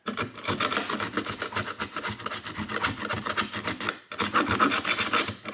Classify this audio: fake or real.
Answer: real